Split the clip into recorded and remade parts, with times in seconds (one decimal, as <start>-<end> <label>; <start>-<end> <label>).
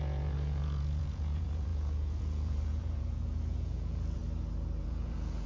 0.0-4.2 remade; 4.2-4.8 recorded; 4.8-5.5 remade